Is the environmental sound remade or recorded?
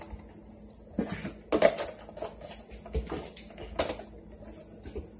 recorded